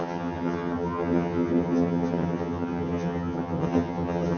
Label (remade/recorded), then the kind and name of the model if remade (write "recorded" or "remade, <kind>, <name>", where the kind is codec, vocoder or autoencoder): remade, vocoder, HiFi-GAN